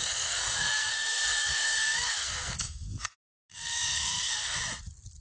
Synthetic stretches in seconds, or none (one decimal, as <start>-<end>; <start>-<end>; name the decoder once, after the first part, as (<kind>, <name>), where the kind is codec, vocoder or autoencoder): 0.0-3.1 (codec, SNAC); 3.5-4.6